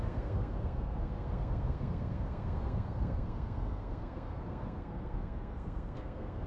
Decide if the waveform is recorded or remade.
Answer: remade